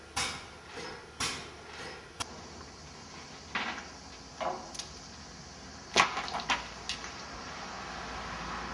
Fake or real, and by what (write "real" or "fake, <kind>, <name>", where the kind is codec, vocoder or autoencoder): real